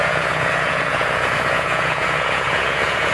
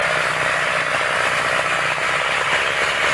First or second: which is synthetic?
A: first